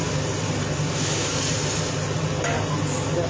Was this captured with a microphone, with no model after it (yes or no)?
yes